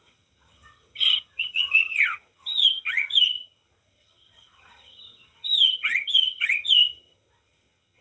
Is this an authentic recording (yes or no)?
no